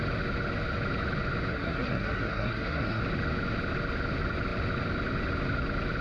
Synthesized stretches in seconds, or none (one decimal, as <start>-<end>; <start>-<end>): 1.5-3.0